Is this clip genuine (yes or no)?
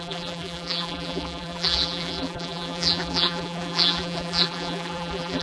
no